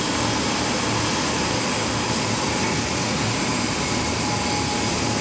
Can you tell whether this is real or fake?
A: real